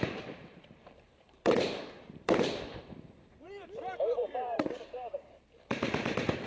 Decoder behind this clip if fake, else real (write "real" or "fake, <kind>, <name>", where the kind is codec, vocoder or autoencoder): fake, vocoder, BigVGAN v2